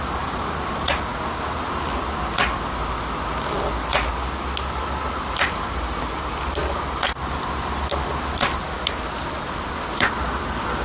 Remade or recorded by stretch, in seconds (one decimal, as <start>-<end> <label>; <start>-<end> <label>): 0.0-1.1 remade; 1.1-5.1 recorded; 5.1-10.8 remade